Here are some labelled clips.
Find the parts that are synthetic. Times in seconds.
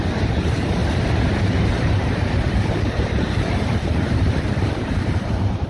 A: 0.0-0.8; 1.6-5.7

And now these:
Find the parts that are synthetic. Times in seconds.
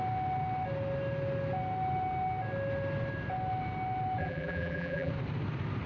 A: 4.2-5.1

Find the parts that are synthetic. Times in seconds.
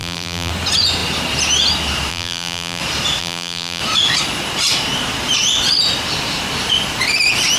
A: 0.0-0.5; 2.1-2.8; 3.2-3.8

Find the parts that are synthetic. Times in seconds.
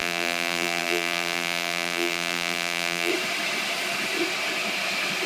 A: 0.0-3.1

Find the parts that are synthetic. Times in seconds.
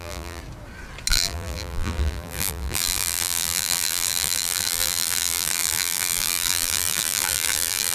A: 0.0-0.4; 1.1-7.9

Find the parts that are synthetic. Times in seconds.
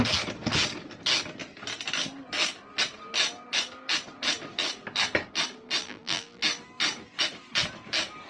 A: 5.8-6.4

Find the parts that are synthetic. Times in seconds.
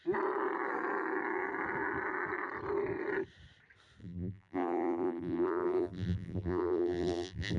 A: 4.0-7.6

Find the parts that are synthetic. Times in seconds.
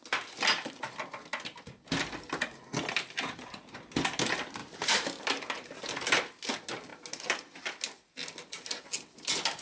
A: 4.6-5.8; 6.9-7.6